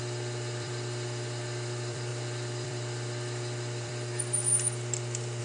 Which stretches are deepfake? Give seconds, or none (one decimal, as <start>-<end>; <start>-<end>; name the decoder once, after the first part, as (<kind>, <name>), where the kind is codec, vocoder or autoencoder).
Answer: 0.0-5.4 (vocoder, BigVGAN v2)